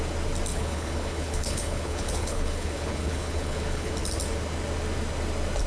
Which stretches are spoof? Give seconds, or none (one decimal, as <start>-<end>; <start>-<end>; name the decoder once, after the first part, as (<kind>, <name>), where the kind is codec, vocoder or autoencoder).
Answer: 0.5-3.9 (codec, HILCodec)